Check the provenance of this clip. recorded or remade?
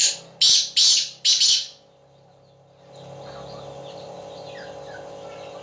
recorded